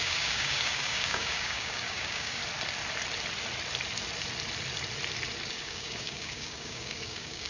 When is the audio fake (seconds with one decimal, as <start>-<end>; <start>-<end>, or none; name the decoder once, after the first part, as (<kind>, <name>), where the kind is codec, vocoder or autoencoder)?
0.0-2.4 (codec, DAC); 5.5-7.5